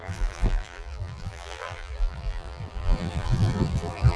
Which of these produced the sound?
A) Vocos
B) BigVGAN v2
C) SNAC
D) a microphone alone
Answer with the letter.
B